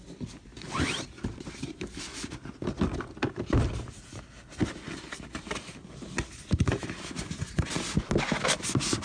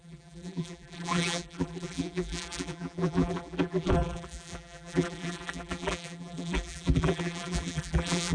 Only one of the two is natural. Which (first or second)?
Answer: first